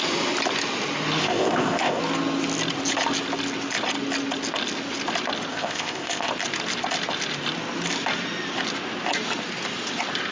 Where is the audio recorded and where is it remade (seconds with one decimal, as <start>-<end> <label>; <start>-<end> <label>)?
0.0-1.2 recorded; 1.2-2.0 remade; 2.0-5.5 recorded; 5.5-6.3 remade; 6.3-10.3 recorded